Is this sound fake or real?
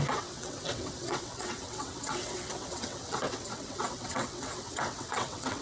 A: fake